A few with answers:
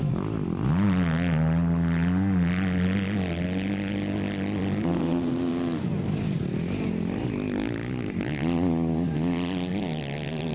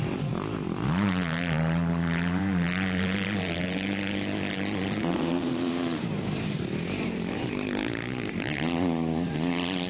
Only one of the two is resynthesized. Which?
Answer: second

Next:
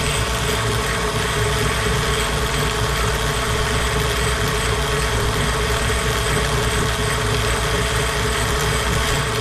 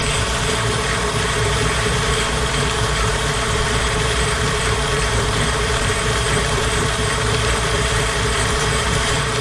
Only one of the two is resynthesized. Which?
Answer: second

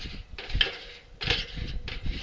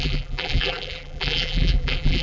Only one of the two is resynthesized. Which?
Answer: second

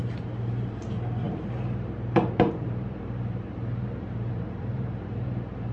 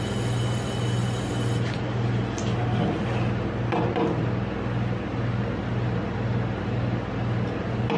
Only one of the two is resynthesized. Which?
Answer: first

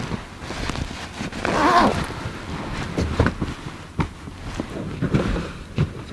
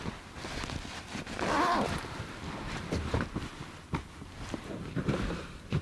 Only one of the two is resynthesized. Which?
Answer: second